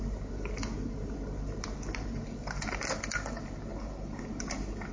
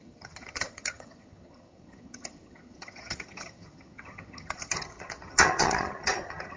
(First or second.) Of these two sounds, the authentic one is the first